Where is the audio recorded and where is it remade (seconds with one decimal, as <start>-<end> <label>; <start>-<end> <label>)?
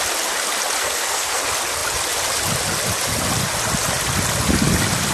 0.0-0.8 recorded; 0.8-1.4 remade; 1.4-5.1 recorded